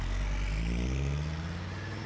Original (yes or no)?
yes